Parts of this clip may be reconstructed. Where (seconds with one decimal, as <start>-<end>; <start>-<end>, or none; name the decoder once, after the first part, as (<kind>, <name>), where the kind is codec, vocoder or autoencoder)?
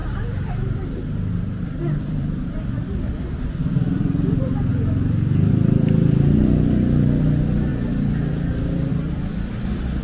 0.0-4.7 (vocoder, BigVGAN v2); 5.5-7.7; 8.9-10.0